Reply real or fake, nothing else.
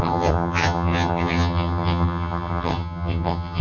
fake